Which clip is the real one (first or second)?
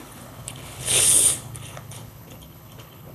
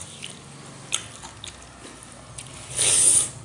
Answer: second